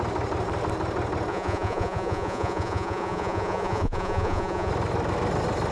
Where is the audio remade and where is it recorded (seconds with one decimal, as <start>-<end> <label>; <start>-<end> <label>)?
0.0-1.3 recorded; 1.3-4.7 remade; 4.7-5.7 recorded